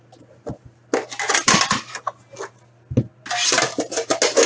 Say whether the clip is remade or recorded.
recorded